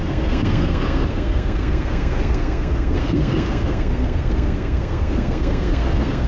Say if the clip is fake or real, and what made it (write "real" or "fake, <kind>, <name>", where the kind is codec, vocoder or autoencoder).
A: fake, codec, SNAC